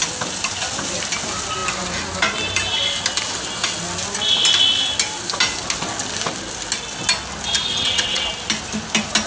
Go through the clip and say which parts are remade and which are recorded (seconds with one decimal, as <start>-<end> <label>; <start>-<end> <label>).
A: 0.0-7.7 recorded; 7.7-8.3 remade; 8.3-9.3 recorded